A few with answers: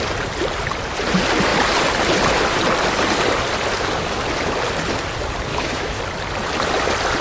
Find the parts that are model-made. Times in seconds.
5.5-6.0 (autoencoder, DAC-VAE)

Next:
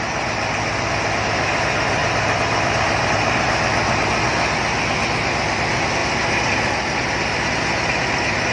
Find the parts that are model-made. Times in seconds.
none

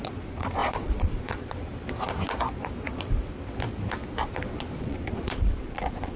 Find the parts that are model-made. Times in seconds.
0.0-1.7 (vocoder, Vocos); 4.6-6.2

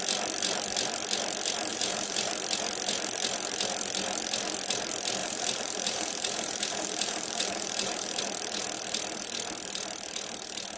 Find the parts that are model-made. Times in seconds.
1.7-2.3 (vocoder, BigVGAN v2); 5.2-8.2

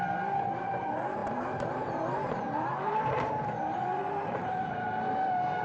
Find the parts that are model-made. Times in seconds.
0.0-5.6 (vocoder, BigVGAN v2)

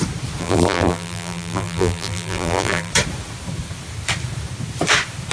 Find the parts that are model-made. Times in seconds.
0.4-2.9 (vocoder, BigVGAN v2)

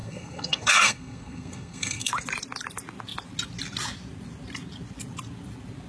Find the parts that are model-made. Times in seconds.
0.0-2.1 (codec, SNAC)

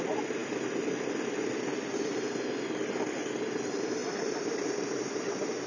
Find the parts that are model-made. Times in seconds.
4.0-5.7 (vocoder, BigVGAN v2)